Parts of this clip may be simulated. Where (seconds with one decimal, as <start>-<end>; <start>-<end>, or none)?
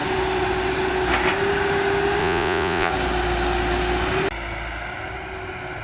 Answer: 2.2-2.9